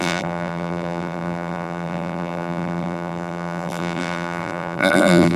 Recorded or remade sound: remade